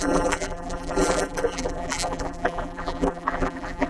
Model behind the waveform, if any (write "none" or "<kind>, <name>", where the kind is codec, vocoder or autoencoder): vocoder, BigVGAN v2